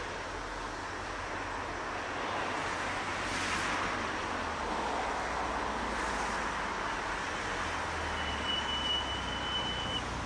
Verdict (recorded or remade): recorded